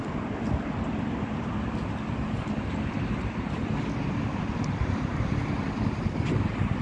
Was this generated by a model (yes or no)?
no